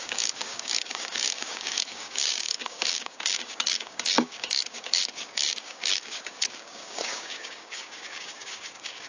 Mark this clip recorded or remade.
remade